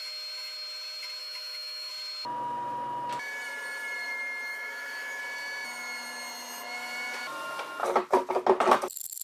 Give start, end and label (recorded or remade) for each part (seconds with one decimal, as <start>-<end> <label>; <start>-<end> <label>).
0.0-1.2 recorded; 1.2-1.9 remade; 1.9-4.5 recorded; 4.5-5.2 remade; 5.2-9.2 recorded